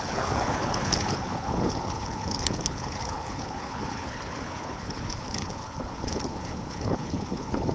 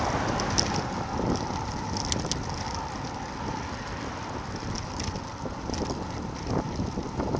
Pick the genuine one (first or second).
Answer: second